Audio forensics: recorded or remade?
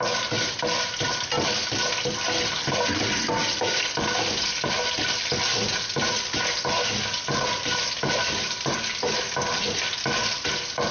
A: recorded